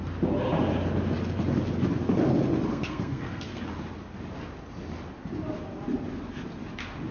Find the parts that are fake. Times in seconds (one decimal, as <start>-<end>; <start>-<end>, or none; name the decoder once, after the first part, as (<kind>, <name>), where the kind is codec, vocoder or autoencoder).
2.7-3.6 (codec, SNAC)